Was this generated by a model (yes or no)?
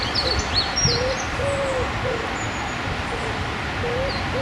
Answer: no